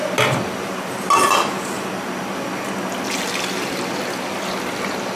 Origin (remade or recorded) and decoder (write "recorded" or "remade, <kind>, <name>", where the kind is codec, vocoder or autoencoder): recorded